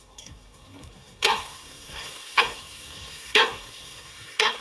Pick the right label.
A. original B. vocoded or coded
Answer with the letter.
B